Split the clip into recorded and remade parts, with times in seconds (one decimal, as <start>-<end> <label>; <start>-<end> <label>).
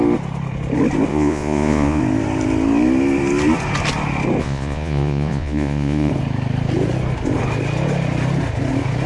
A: 0.0-1.1 recorded; 1.1-2.0 remade; 2.0-4.4 recorded; 4.4-6.1 remade; 6.1-9.1 recorded